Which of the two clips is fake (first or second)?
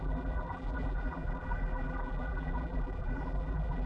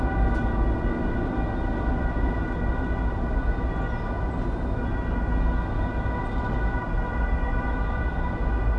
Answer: first